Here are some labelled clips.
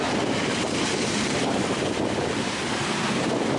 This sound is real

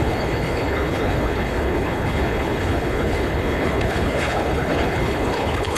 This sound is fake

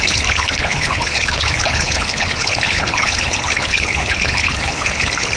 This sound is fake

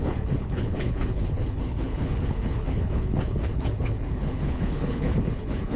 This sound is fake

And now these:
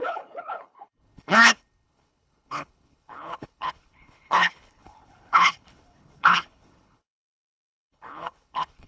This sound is fake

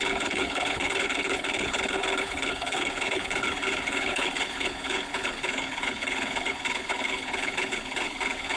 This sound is fake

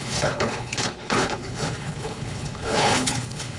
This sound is fake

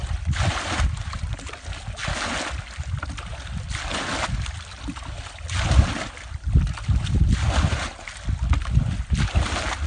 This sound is real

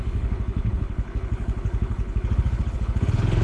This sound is fake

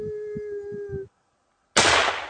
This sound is real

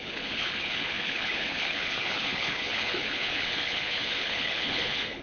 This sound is fake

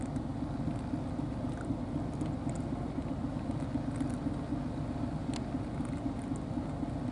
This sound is real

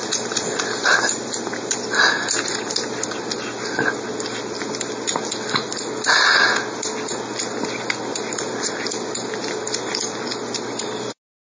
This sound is real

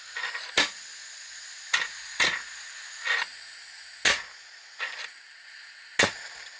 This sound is real